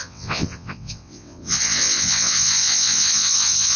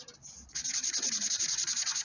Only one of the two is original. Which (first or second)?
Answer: second